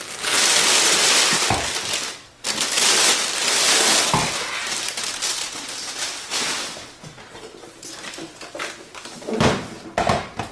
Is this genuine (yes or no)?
yes